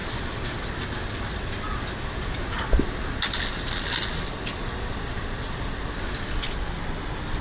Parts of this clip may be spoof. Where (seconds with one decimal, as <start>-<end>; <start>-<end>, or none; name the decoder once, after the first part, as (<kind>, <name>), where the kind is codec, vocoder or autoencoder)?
none